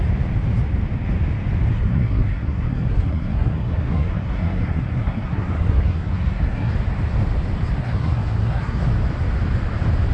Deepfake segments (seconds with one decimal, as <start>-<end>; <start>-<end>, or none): 1.7-6.7; 7.8-8.8